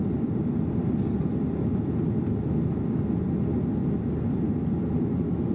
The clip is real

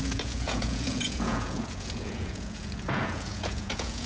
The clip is fake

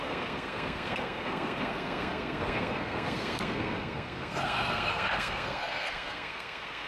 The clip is fake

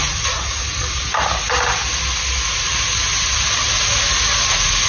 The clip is real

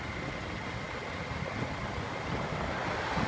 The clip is real